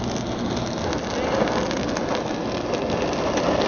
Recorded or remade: recorded